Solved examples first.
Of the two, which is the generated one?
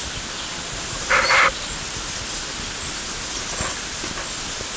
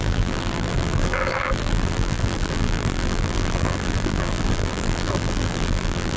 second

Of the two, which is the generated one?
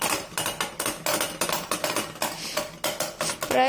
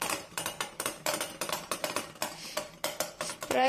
second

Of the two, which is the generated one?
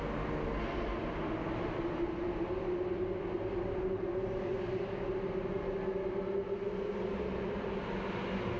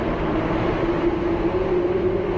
second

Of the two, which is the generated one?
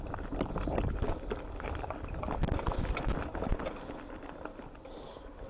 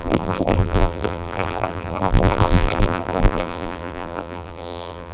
second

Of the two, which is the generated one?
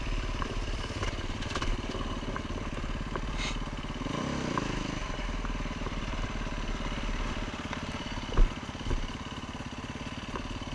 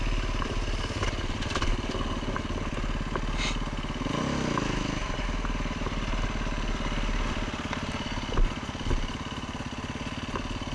first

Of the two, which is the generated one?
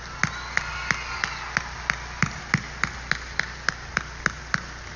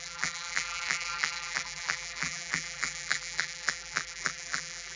second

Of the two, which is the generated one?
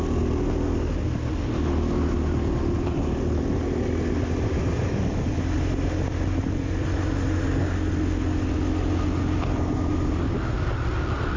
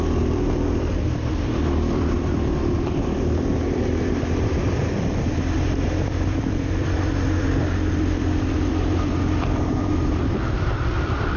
second